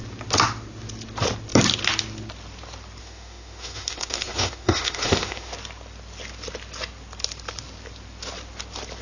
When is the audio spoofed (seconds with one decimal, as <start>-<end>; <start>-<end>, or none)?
3.0-5.5